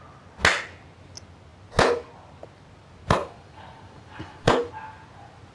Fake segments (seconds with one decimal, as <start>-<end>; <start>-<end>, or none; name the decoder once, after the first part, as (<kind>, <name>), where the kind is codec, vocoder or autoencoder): 3.2-4.7 (vocoder, BigVGAN v2)